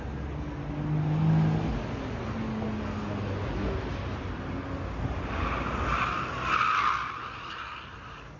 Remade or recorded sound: recorded